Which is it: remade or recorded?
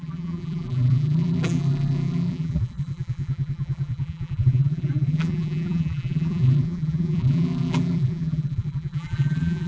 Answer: remade